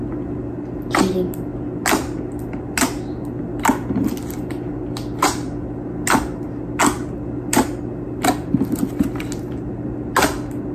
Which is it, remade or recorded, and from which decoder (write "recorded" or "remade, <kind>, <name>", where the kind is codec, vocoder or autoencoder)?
recorded